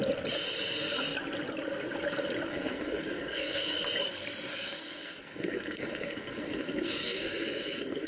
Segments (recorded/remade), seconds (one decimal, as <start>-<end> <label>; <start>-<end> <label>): 0.0-2.5 recorded; 2.5-3.8 remade; 3.8-4.5 recorded; 4.5-8.1 remade